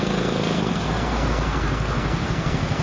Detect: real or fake fake